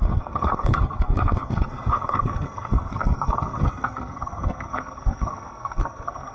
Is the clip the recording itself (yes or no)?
no